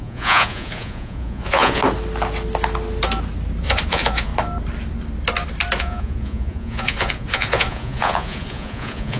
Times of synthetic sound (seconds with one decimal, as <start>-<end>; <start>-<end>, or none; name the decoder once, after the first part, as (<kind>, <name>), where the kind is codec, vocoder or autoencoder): 0.0-1.8 (vocoder, Vocos); 3.6-4.3; 5.8-9.2